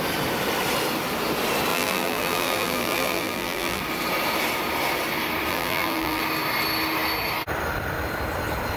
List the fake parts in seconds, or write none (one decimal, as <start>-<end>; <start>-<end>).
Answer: 1.7-3.8; 5.5-6.2